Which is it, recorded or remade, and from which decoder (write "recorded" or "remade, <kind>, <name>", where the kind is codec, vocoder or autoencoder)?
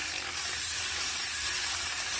remade, vocoder, BigVGAN v2